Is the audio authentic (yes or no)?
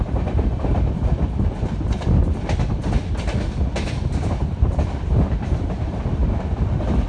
yes